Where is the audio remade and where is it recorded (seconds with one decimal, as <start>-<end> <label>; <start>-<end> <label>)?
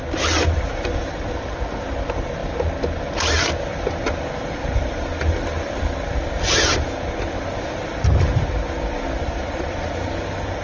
0.0-10.6 recorded